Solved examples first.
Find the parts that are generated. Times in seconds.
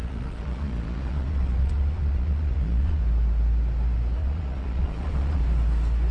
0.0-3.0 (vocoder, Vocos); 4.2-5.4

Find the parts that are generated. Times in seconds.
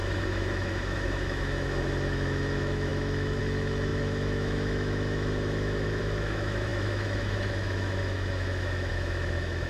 0.0-9.7 (autoencoder, DAC-VAE)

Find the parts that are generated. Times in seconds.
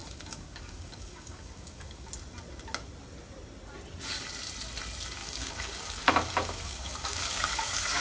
0.0-2.1 (codec, DAC); 5.2-8.0